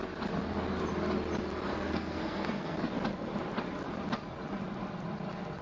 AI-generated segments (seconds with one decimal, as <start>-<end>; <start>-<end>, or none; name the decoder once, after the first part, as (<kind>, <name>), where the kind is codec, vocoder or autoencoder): 1.7-2.9 (codec, SNAC)